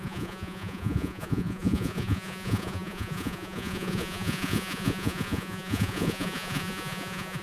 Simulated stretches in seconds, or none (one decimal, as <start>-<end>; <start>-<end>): 0.0-7.4